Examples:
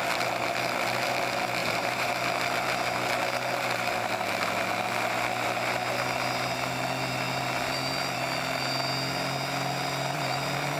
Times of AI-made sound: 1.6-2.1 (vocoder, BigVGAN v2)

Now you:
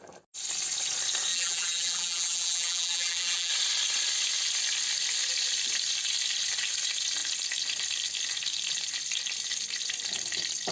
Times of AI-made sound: 1.3-3.5 (vocoder, BigVGAN v2)

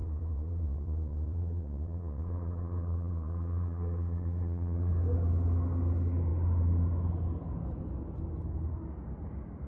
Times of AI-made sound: 0.0-4.9 (vocoder, Vocos)

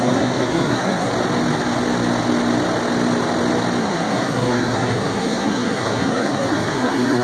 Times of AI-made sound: 0.0-1.1 (codec, SNAC); 3.8-7.2

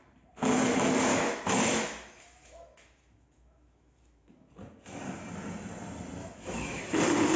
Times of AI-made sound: 1.1-4.5 (autoencoder, DAC-VAE); 6.2-6.8

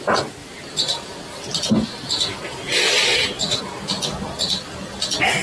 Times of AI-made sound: 0.4-3.6 (vocoder, BigVGAN v2)